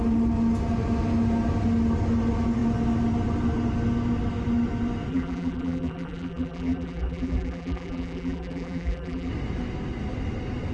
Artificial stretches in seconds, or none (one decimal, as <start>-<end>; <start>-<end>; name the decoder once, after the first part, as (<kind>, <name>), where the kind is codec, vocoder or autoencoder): 5.1-9.3 (vocoder, BigVGAN v2)